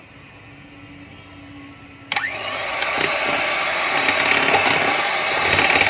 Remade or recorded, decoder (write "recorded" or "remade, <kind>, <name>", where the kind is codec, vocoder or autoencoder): recorded